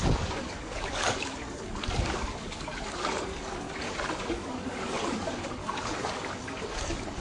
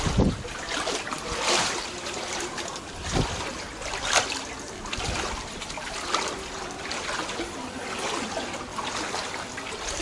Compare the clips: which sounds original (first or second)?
second